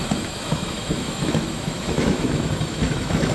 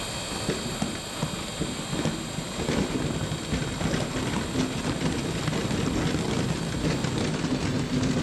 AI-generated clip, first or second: first